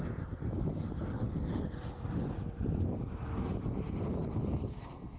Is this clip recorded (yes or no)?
yes